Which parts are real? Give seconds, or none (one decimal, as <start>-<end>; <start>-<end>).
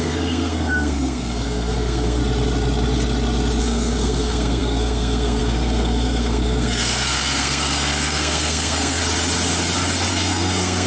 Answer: 2.2-3.6; 9.0-10.1